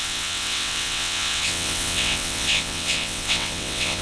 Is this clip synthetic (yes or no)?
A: yes